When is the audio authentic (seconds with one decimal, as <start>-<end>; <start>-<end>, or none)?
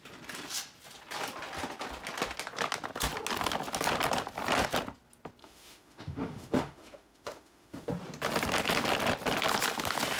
0.0-5.4; 7.9-10.2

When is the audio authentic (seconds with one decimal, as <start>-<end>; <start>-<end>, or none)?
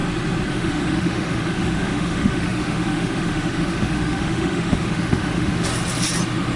0.0-0.5; 5.7-6.6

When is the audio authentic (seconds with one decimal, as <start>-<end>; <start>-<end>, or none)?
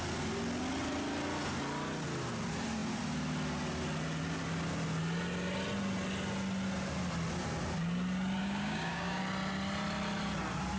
0.0-8.4; 9.2-10.8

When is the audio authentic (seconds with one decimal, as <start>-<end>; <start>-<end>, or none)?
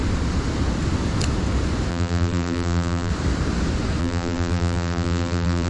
0.0-1.9; 3.1-4.0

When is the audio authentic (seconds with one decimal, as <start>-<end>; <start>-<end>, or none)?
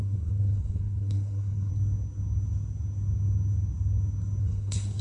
1.7-4.4